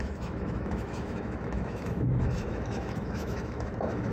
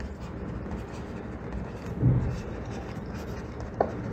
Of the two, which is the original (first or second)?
second